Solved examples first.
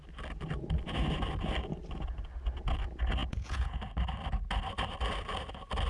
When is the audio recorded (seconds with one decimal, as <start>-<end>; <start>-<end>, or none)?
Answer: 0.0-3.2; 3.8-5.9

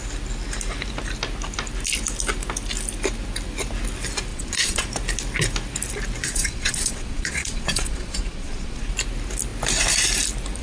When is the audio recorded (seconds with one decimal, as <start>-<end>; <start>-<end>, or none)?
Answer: 0.0-4.3; 4.9-6.2; 8.9-10.6

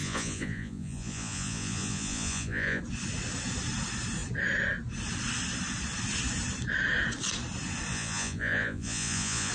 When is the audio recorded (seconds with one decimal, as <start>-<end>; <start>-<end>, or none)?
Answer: 2.8-7.9

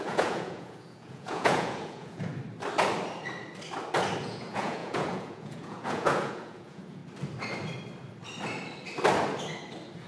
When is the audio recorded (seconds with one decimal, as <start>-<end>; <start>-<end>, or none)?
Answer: 2.3-4.2; 7.0-10.1

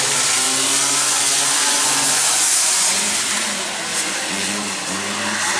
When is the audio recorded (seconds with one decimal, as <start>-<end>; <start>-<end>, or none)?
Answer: 0.0-1.1; 3.0-3.9; 4.6-5.6